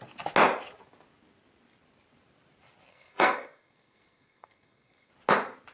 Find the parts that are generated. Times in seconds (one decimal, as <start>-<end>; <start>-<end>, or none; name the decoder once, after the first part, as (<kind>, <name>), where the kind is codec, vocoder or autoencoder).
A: 2.9-5.1 (codec, SNAC)